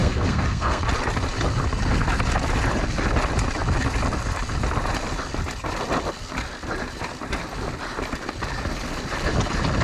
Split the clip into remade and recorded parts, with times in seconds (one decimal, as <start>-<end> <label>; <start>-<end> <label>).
0.0-0.8 remade; 0.8-9.8 recorded